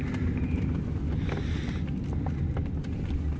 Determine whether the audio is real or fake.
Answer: real